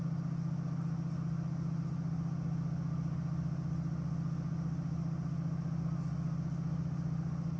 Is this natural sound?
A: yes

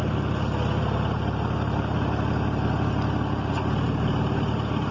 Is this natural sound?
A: yes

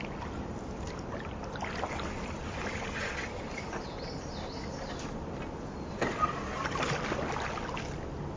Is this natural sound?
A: yes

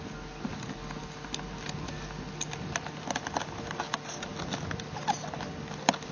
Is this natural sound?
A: yes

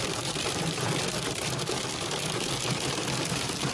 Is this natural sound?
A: no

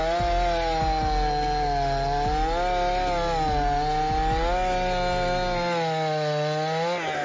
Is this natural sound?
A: yes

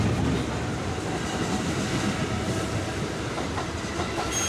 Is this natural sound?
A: yes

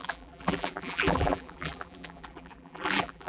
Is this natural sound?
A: no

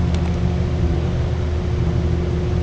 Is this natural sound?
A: yes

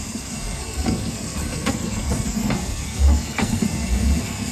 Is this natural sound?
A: no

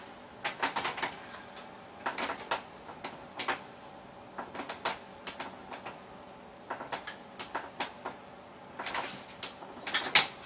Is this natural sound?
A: yes